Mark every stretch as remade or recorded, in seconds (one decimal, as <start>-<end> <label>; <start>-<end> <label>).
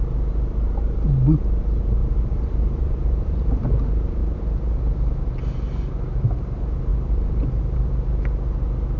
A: 0.0-2.0 recorded; 2.0-3.6 remade; 3.6-6.9 recorded; 6.9-7.9 remade; 7.9-9.0 recorded